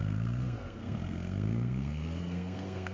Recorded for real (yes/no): no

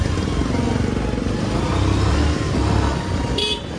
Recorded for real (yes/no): yes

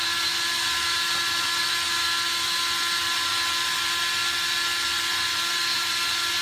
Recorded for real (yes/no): yes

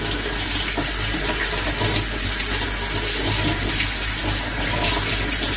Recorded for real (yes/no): yes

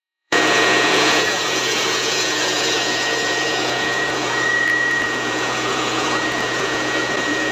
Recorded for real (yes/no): no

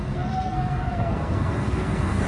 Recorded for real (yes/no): no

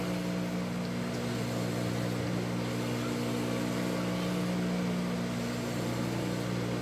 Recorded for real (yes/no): yes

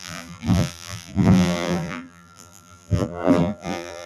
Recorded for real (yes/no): no